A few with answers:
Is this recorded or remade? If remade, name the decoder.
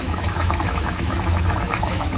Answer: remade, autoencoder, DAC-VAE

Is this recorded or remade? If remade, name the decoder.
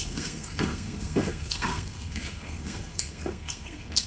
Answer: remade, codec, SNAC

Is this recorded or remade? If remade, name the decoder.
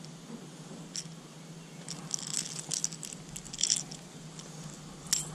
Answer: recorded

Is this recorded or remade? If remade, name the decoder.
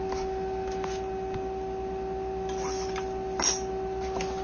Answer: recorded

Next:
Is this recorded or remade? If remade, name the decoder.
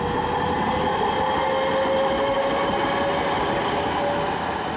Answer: recorded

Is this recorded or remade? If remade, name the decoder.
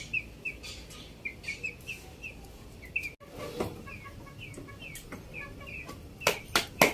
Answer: recorded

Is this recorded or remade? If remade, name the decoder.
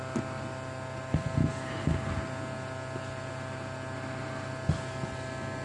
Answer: recorded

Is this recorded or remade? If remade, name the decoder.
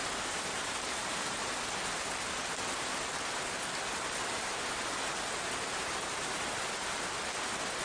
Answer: recorded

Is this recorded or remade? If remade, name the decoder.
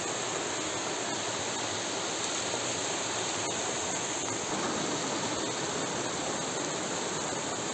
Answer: recorded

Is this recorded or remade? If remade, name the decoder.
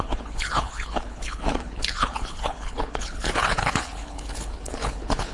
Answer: remade, codec, HILCodec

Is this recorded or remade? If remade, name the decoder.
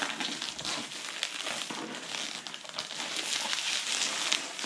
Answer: recorded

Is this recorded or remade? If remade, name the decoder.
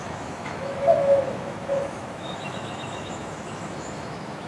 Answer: remade, autoencoder, DAC-VAE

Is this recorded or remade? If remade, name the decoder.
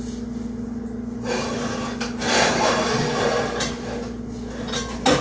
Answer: recorded